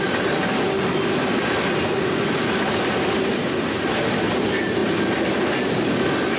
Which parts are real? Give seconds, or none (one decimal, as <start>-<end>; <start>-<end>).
0.0-6.4